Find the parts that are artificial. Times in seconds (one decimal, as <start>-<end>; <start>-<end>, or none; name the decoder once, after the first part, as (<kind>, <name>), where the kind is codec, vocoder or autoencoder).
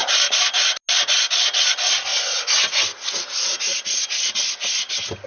none